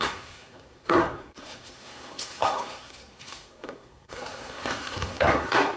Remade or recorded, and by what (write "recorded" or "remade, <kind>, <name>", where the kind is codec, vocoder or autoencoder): remade, codec, SNAC